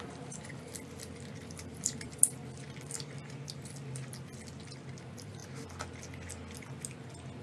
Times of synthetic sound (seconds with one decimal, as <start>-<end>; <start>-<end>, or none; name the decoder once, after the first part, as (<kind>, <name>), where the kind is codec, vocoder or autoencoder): 0.0-0.7 (vocoder, BigVGAN v2); 1.4-2.2; 5.0-5.4